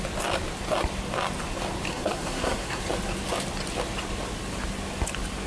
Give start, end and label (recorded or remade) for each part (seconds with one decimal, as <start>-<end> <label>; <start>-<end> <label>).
0.0-1.9 recorded; 1.9-2.8 remade; 2.8-5.5 recorded